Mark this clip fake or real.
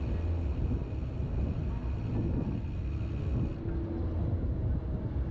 real